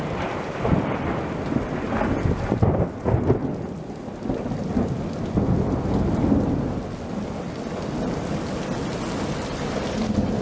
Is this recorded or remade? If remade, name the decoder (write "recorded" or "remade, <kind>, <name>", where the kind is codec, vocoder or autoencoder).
recorded